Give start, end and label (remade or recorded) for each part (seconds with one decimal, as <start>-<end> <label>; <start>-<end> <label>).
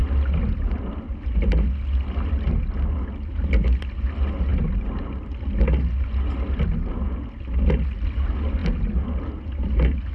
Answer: 0.0-10.1 recorded